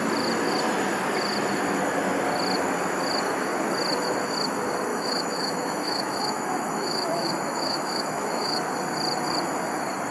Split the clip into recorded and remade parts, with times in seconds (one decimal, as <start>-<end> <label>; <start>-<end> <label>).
0.0-4.9 recorded; 4.9-8.6 remade; 8.6-10.1 recorded